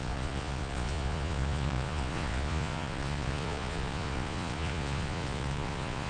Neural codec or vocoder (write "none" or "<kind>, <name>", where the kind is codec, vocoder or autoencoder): vocoder, Vocos